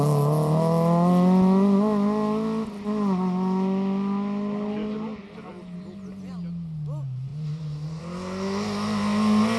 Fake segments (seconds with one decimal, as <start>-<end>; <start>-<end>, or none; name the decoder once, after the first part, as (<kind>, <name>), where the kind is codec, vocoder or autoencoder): none